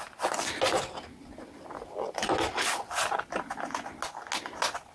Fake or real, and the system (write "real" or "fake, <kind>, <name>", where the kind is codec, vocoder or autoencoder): real